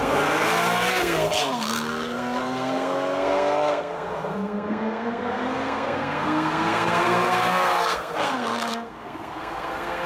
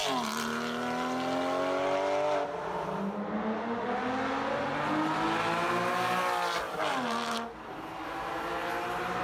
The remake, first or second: first